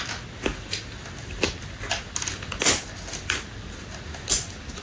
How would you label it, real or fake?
real